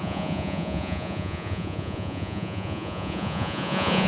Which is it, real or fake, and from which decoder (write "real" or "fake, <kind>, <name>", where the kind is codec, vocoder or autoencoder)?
fake, vocoder, Vocos